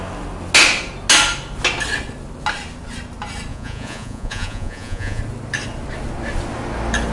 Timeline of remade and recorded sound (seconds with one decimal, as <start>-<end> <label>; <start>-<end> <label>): 0.0-3.5 recorded; 3.5-5.2 remade; 5.2-7.1 recorded